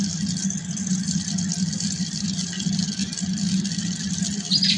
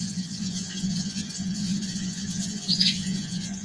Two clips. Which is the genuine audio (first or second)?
first